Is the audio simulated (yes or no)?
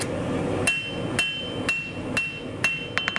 no